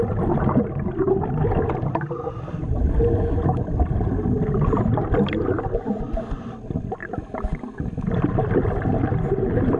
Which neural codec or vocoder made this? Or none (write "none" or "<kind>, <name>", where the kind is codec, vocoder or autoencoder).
none